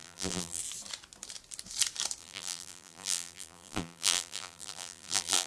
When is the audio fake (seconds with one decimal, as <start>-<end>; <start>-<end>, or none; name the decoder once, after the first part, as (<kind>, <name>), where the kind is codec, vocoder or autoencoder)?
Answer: 0.0-0.6 (vocoder, BigVGAN v2); 2.2-5.5